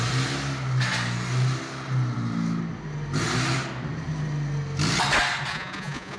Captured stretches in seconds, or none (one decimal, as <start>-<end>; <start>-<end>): 0.0-5.5